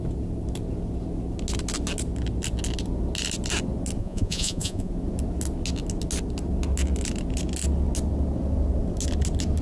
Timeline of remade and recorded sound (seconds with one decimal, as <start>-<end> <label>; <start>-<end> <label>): 0.0-4.0 recorded; 4.0-4.9 remade; 4.9-9.6 recorded